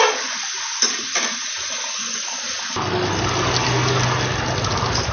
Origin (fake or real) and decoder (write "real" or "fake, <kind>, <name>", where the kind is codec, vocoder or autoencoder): real